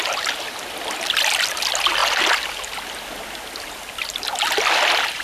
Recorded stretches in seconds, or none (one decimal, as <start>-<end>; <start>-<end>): 0.0-5.2